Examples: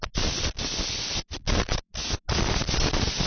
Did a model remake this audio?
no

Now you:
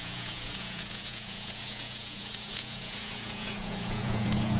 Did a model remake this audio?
yes